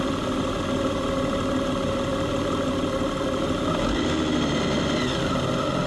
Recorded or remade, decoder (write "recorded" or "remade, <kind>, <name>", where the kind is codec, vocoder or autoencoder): recorded